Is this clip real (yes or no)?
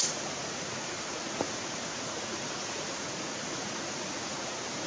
no